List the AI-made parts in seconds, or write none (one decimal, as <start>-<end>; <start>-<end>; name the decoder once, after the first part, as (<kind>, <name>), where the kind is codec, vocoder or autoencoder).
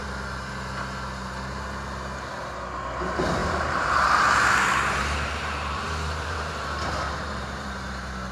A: 0.0-0.5 (vocoder, BigVGAN v2); 3.4-8.3